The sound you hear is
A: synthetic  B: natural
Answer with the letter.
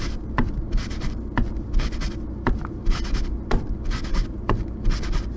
B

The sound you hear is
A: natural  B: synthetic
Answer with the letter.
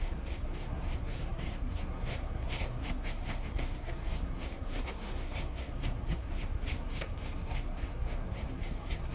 B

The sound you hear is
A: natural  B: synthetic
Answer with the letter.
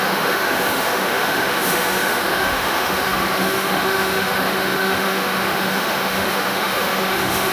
B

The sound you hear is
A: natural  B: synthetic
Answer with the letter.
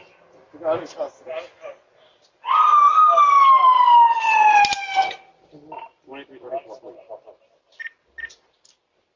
A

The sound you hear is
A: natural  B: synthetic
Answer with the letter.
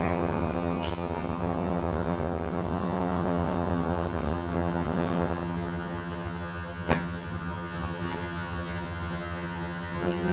B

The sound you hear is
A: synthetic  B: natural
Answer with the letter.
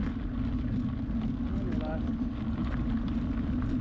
B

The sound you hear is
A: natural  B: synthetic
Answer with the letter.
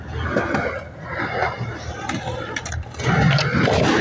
A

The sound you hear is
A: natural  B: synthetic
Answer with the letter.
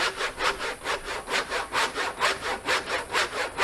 B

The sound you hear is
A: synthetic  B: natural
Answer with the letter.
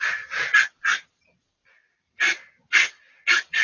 B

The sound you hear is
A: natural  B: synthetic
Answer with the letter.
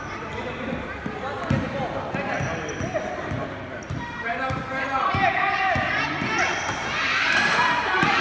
A